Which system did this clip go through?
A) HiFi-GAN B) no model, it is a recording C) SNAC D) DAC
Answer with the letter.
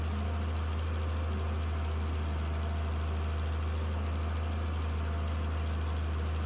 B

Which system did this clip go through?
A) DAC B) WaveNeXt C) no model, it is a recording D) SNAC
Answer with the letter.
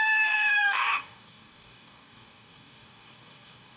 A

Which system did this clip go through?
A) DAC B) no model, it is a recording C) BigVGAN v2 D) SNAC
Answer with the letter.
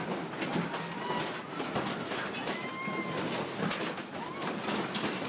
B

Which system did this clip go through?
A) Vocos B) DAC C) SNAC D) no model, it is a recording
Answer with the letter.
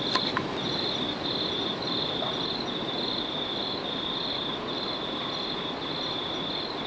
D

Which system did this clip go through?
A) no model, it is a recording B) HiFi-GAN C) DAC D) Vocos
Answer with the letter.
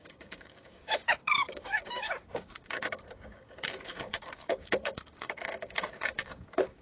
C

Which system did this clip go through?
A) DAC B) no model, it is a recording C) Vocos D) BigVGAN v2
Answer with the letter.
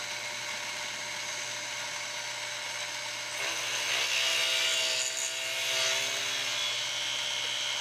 B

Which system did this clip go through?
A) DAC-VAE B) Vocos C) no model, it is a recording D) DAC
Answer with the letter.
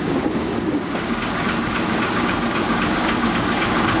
D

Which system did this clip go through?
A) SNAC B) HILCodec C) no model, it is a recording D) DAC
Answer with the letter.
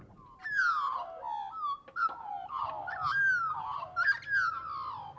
C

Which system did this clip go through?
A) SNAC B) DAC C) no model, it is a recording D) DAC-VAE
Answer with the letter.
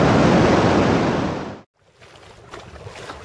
C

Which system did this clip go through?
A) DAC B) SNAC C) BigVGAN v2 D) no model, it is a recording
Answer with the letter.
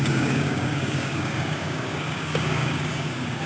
A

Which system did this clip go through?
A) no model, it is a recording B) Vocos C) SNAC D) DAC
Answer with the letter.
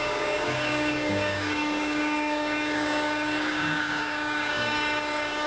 D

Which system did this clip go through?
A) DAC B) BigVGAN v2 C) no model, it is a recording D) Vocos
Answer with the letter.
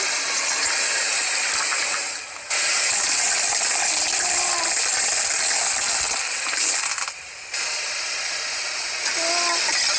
C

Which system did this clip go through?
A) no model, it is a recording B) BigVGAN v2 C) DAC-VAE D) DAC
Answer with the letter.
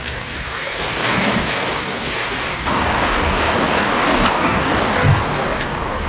D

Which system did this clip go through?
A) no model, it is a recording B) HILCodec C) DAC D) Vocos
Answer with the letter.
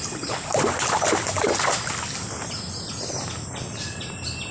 A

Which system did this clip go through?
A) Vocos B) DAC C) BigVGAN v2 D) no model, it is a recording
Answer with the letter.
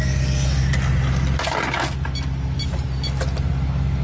D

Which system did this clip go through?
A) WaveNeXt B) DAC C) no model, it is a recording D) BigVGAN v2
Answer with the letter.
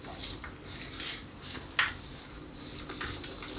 C